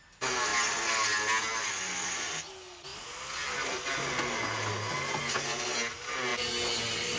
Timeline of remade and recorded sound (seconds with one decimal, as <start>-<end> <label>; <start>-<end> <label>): 0.0-6.3 recorded; 6.3-6.8 remade; 6.8-7.2 recorded